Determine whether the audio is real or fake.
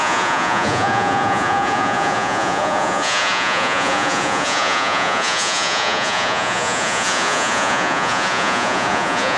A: fake